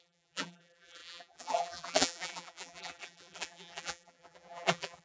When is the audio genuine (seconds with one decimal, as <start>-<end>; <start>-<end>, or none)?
none

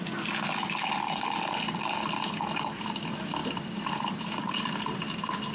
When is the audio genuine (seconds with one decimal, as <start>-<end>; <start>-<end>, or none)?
0.0-3.4; 5.0-5.5